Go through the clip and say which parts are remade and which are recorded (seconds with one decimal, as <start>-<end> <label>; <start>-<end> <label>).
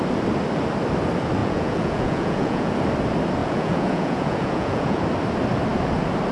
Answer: 0.0-1.4 recorded; 1.4-2.7 remade; 2.7-3.4 recorded; 3.4-5.0 remade; 5.0-6.3 recorded